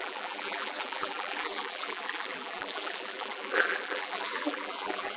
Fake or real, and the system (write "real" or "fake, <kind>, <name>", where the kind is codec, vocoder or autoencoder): fake, vocoder, BigVGAN v2